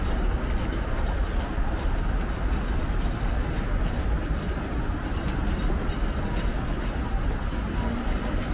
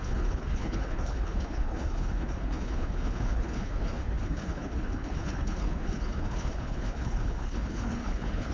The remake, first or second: second